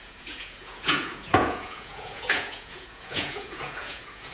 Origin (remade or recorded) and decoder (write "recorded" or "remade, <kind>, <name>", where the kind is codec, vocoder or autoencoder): remade, vocoder, Vocos